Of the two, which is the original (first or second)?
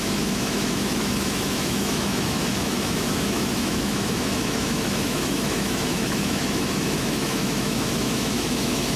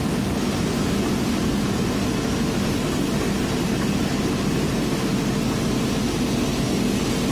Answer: second